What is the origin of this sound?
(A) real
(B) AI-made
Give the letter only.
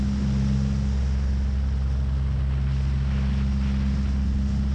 A